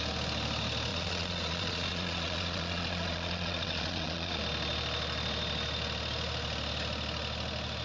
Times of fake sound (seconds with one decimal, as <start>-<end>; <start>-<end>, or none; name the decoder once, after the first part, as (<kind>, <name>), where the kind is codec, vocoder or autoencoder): 0.9-4.4 (vocoder, Vocos)